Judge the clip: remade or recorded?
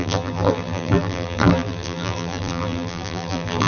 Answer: remade